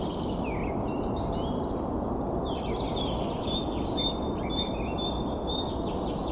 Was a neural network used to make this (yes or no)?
no